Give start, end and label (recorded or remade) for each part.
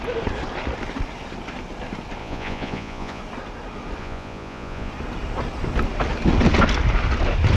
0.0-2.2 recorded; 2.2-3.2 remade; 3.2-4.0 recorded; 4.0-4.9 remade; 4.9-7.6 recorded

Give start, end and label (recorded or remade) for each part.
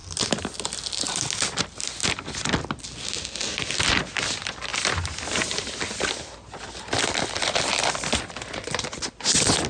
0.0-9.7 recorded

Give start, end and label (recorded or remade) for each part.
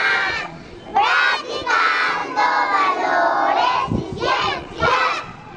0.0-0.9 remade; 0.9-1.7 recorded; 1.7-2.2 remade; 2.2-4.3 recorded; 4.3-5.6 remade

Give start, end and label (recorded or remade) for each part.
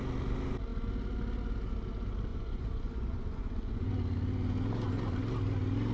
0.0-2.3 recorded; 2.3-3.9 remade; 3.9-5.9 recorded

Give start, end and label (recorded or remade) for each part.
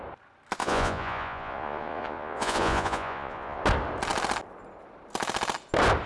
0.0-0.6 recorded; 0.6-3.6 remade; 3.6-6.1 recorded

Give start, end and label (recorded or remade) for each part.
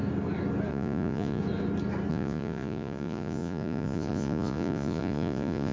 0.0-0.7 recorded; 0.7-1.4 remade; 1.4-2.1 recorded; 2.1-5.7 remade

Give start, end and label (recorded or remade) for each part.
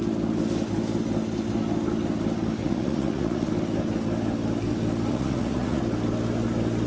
0.0-2.6 recorded; 2.6-3.5 remade; 3.5-5.1 recorded; 5.1-5.8 remade; 5.8-6.9 recorded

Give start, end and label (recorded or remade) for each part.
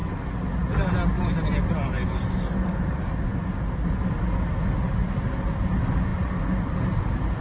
0.0-7.4 recorded